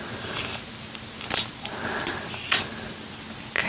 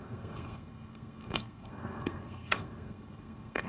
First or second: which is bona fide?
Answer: first